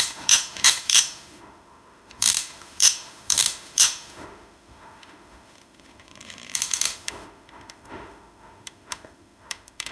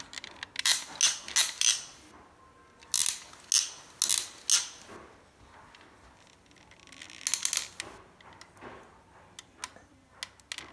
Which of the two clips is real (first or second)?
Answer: second